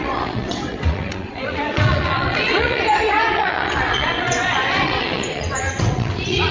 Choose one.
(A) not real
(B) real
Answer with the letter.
A